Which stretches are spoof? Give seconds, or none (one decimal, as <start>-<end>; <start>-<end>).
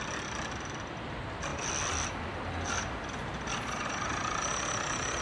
none